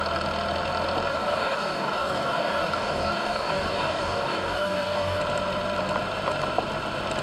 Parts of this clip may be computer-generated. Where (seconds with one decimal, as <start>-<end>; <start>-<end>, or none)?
1.1-5.2